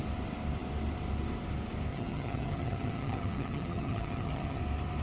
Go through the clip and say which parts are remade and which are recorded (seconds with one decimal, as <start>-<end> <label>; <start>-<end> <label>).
0.0-1.9 recorded; 1.9-4.6 remade; 4.6-5.0 recorded